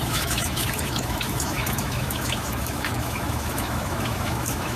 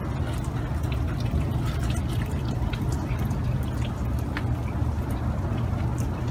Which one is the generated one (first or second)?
first